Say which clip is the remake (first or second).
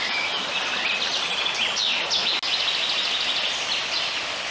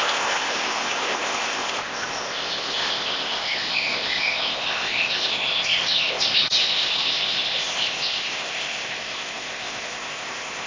second